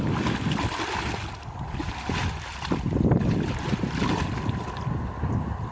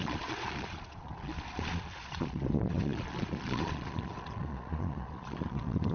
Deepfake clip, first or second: second